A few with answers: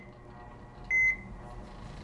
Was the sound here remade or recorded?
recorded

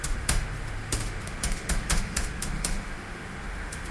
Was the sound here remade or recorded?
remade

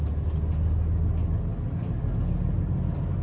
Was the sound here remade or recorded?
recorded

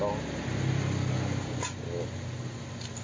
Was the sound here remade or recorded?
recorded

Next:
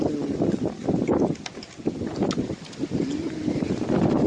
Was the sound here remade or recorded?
recorded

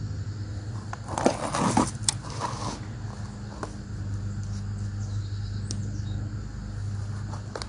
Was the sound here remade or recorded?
recorded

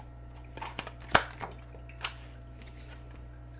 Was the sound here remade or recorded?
recorded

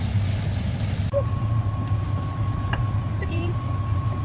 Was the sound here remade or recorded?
recorded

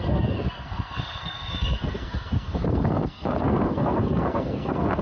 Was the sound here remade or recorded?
remade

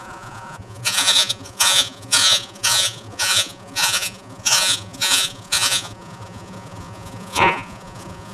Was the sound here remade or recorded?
remade